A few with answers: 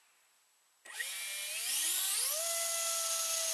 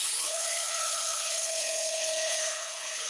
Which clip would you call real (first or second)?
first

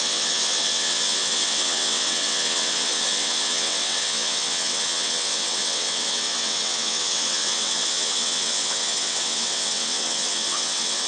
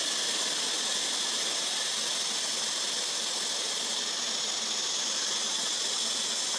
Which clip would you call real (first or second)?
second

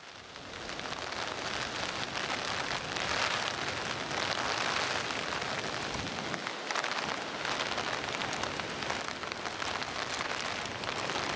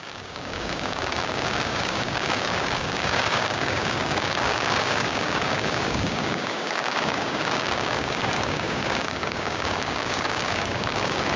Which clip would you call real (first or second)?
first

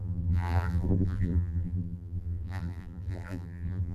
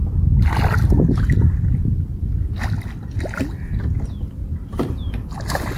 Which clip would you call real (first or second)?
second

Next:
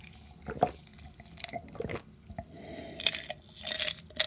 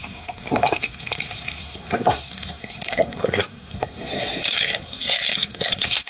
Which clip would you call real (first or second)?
first